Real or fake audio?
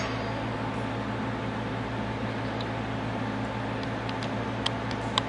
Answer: real